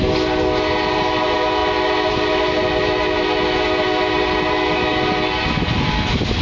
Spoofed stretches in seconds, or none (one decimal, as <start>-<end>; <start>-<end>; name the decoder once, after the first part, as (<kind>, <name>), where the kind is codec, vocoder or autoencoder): none